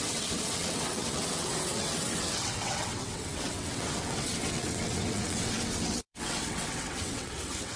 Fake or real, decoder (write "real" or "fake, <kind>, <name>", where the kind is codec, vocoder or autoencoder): fake, vocoder, WaveNeXt